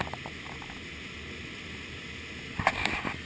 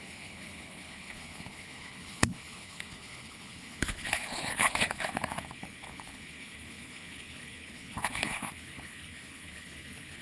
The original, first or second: first